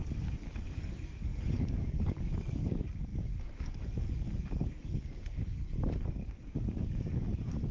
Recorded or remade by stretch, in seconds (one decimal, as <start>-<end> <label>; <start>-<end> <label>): 0.0-5.6 remade; 5.6-6.2 recorded; 6.2-7.7 remade